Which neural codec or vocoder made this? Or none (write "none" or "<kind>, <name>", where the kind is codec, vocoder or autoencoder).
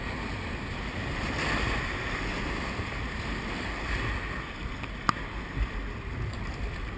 none